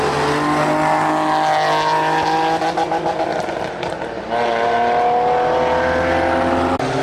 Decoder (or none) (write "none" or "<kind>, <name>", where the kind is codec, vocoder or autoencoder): none